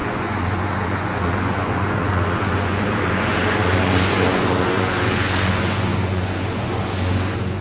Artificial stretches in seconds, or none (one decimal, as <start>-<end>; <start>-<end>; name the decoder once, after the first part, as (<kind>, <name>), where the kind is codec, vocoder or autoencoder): 0.0-7.6 (vocoder, Vocos)